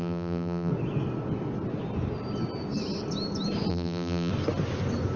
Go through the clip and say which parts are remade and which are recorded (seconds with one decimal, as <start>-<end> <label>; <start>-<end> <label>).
0.0-0.7 remade; 0.7-3.7 recorded; 3.7-4.3 remade; 4.3-5.2 recorded